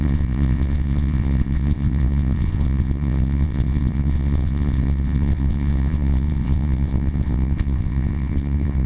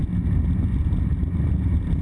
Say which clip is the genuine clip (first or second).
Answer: second